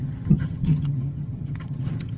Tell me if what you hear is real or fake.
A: fake